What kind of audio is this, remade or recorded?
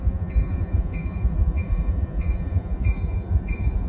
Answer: remade